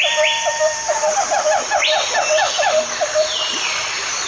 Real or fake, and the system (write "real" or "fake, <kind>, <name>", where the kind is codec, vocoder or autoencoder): real